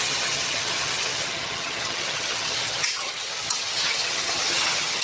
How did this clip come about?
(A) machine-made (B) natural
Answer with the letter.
A